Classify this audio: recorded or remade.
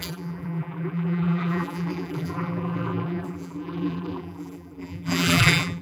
remade